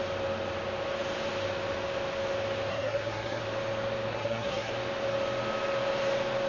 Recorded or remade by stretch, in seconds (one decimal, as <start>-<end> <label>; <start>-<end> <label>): 0.0-2.7 recorded; 2.7-3.4 remade; 3.4-4.1 recorded; 4.1-4.7 remade; 4.7-6.5 recorded